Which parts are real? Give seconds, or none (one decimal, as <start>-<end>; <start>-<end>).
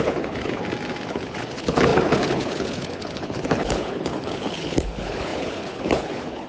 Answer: 0.6-1.1